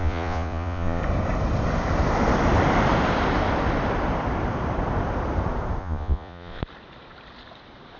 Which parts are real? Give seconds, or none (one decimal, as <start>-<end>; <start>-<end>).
1.0-5.8; 6.6-8.0